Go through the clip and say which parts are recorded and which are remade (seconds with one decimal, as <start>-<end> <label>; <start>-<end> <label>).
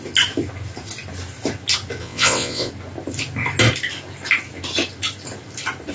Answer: 0.0-2.0 recorded; 2.0-2.7 remade; 2.7-5.9 recorded